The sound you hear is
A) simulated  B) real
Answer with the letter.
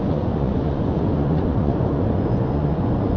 A